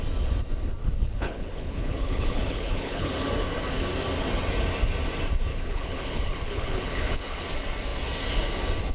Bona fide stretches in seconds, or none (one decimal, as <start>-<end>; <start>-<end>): 0.0-0.8; 3.1-5.5; 7.4-8.9